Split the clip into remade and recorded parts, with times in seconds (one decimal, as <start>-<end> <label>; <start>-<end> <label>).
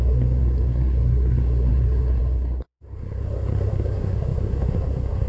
0.0-5.3 remade